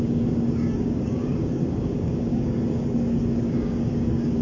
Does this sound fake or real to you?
fake